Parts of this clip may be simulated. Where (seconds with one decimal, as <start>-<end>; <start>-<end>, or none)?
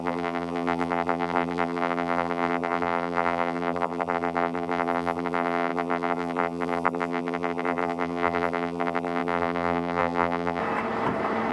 0.0-10.6